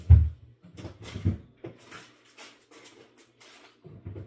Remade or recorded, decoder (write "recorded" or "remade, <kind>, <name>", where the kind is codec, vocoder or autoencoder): recorded